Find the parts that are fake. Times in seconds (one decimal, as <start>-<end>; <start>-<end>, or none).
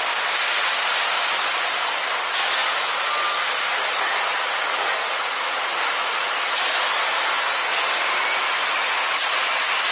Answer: 2.6-4.0